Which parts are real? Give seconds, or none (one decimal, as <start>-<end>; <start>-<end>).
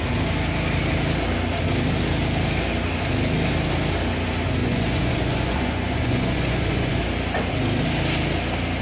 0.0-4.6; 7.0-8.8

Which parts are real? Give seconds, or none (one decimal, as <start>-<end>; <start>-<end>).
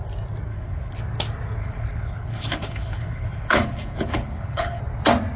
0.0-0.5; 1.0-1.6; 4.8-5.4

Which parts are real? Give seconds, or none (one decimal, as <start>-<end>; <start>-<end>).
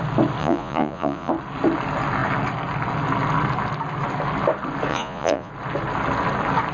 0.0-0.4; 1.3-4.9; 5.5-6.7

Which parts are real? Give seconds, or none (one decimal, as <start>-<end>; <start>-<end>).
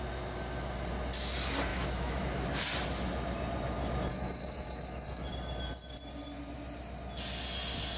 0.0-1.7; 2.2-4.1; 5.3-8.0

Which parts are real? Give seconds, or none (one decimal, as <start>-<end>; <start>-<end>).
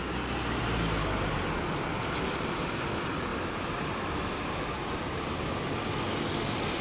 0.0-6.8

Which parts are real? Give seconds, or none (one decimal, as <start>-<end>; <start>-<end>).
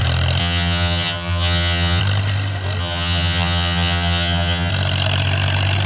0.0-0.4; 2.0-2.8; 4.7-5.9